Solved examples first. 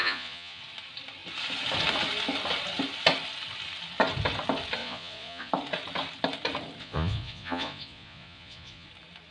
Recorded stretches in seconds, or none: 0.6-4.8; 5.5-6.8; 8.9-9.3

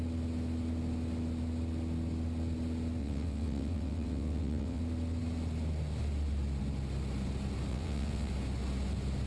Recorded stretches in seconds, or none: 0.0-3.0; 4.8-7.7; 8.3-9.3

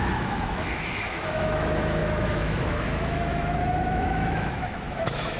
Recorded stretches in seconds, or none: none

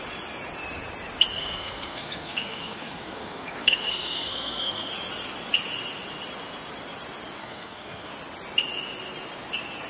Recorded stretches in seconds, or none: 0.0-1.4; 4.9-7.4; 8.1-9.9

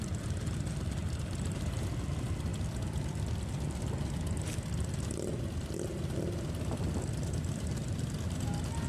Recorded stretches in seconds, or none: 0.0-1.0; 1.9-8.9

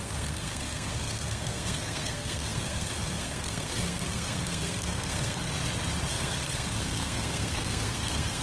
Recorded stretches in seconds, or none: 5.4-6.1

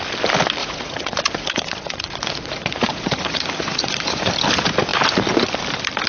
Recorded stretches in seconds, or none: 0.0-0.6; 4.3-6.1